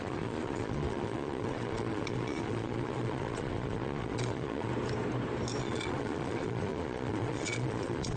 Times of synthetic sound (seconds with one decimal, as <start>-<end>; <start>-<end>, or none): 0.0-4.7; 5.6-8.2